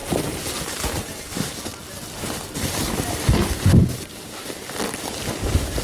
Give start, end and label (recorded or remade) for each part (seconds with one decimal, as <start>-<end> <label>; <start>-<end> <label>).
0.0-0.6 recorded; 0.6-1.7 remade; 1.7-5.2 recorded; 5.2-5.8 remade